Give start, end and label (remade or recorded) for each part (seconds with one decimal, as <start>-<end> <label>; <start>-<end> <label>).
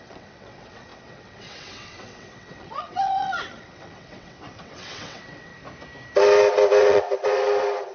0.0-5.5 remade; 5.5-6.8 recorded; 6.8-7.9 remade